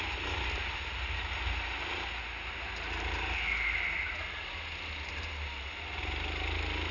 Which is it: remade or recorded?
recorded